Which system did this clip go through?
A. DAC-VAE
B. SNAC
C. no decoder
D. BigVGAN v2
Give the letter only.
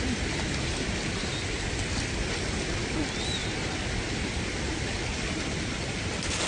C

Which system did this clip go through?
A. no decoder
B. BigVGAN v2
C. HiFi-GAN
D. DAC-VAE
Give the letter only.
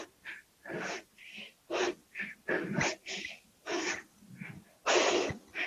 A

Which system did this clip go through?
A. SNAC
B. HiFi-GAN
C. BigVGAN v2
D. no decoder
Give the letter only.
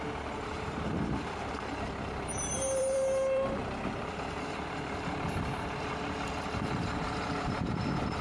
C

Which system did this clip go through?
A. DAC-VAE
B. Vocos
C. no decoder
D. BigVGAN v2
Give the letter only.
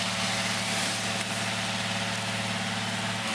C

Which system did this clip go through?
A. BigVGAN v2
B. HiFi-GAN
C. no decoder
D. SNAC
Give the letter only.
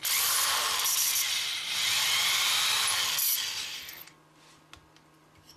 C